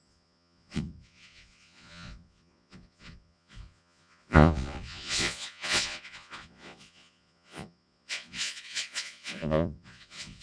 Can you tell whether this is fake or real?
fake